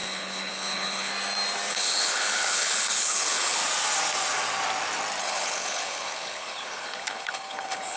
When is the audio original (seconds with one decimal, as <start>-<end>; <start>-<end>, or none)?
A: 1.1-1.7; 3.6-5.2